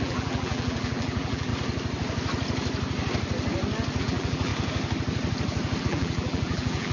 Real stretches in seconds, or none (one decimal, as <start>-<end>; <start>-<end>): 1.5-4.0; 4.5-5.8